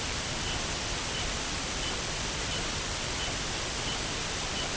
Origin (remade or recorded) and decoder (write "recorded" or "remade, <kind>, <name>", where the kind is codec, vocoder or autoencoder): recorded